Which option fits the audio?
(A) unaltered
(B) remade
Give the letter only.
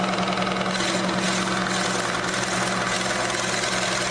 A